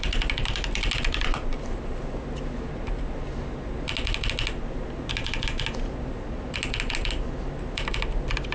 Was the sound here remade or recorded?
recorded